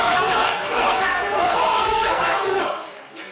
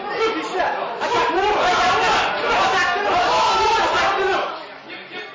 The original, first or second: second